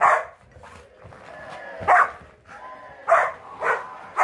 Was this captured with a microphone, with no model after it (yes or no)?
yes